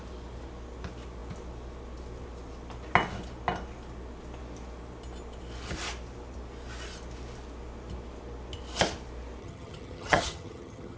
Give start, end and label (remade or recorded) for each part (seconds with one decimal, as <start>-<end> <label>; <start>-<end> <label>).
0.0-9.4 recorded; 9.4-11.0 remade